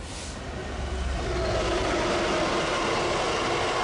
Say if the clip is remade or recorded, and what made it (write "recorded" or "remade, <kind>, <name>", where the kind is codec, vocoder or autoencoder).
recorded